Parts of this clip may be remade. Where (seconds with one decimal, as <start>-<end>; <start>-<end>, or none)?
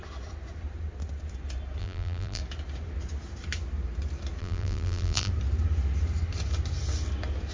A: 1.8-2.4; 4.4-5.3